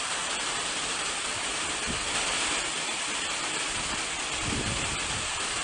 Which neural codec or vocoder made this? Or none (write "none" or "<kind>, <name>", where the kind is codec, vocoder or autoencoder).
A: vocoder, BigVGAN v2